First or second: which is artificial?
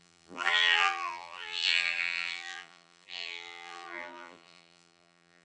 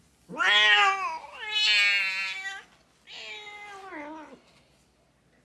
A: first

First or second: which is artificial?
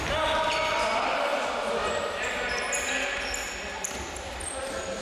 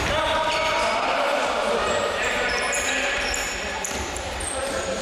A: second